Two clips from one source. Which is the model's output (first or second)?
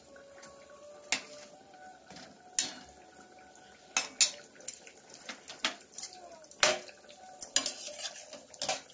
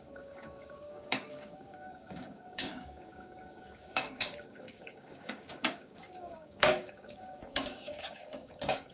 second